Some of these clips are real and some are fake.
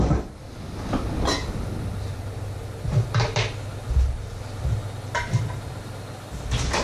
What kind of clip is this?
real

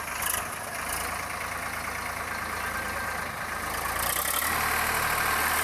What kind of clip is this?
real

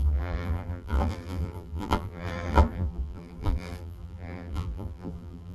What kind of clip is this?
fake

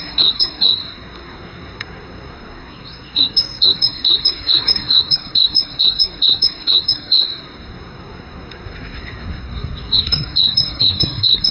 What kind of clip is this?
fake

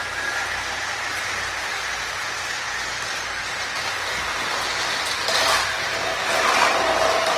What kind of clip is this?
real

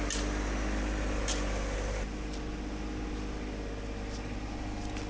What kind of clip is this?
real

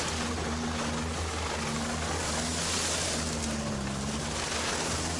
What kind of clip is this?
real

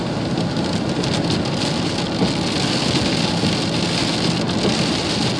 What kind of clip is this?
real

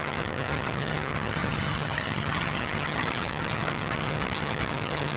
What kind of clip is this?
fake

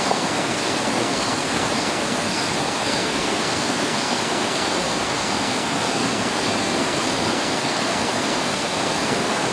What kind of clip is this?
fake